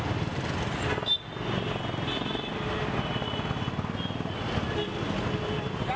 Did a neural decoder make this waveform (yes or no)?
no